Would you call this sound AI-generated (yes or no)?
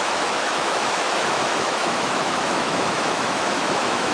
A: yes